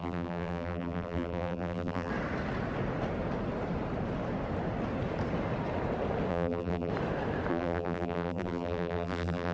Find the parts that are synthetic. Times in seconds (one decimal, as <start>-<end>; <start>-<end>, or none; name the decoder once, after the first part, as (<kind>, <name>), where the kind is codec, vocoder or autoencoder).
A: 0.0-2.1 (vocoder, BigVGAN v2); 6.3-6.9; 7.5-9.5